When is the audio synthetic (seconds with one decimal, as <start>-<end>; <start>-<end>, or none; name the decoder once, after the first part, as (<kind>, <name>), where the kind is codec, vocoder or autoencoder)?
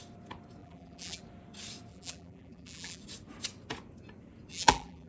0.6-1.2 (vocoder, BigVGAN v2); 1.9-3.0; 4.5-5.1